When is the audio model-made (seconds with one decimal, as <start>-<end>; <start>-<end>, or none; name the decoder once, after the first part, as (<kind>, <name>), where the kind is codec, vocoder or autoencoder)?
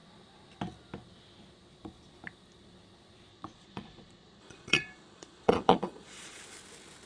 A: 3.3-6.4 (vocoder, Vocos)